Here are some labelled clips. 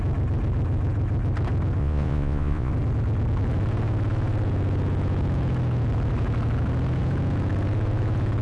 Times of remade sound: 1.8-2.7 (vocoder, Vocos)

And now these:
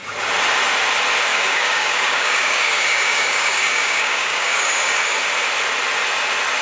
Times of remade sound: 1.3-5.2 (codec, DAC)

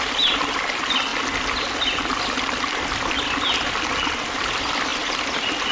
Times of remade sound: 0.0-1.1 (vocoder, BigVGAN v2); 4.5-5.7

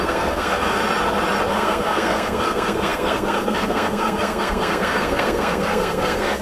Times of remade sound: 0.0-0.8 (codec, SNAC); 1.5-6.4

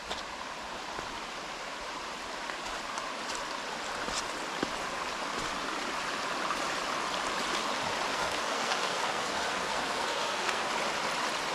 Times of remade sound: 8.1-10.7 (codec, SNAC)

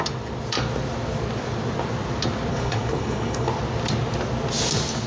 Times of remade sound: 2.5-3.5 (codec, HILCodec)